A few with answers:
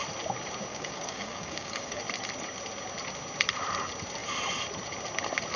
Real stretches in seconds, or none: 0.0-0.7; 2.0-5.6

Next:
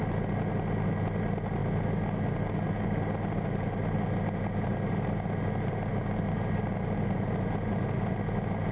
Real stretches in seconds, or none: 0.0-8.7